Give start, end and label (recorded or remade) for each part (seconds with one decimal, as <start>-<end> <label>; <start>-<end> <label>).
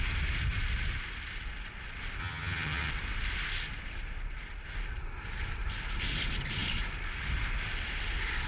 0.0-2.2 recorded; 2.2-2.9 remade; 2.9-8.5 recorded